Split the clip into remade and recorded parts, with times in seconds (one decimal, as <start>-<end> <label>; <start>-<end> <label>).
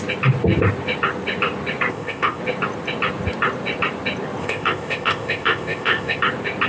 0.0-1.9 recorded; 1.9-2.4 remade; 2.4-4.4 recorded; 4.4-6.2 remade; 6.2-6.7 recorded